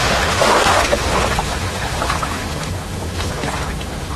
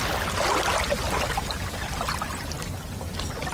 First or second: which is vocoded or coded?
first